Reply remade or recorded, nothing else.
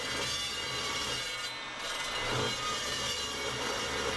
recorded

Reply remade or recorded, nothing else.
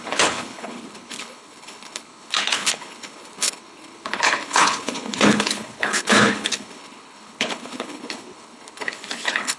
remade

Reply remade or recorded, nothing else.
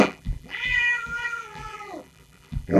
remade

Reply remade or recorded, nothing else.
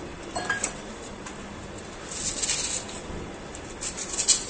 recorded